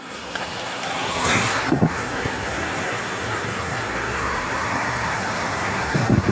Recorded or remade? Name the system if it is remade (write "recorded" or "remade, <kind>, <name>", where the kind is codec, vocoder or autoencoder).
remade, codec, SNAC